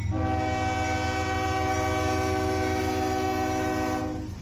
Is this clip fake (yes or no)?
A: no